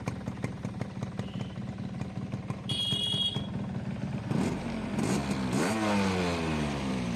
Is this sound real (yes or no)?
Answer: yes